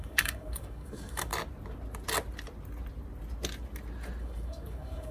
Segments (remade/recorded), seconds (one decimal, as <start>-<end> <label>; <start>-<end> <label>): 0.0-1.3 remade; 1.3-4.2 recorded; 4.2-5.1 remade

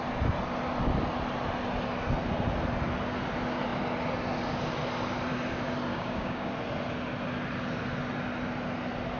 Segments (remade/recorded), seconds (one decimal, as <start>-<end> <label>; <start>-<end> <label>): 0.0-5.9 recorded; 5.9-6.5 remade; 6.5-9.2 recorded

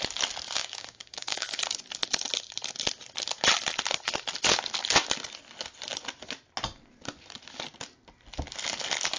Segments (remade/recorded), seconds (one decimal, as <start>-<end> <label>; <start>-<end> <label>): 0.0-0.6 recorded; 0.6-1.6 remade; 1.6-9.2 recorded

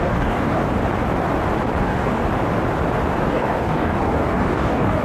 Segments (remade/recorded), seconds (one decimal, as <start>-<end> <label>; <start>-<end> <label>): 0.0-0.6 remade; 0.6-1.8 recorded; 1.8-2.2 remade; 2.2-3.3 recorded; 3.3-5.0 remade